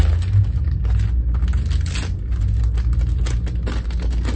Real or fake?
real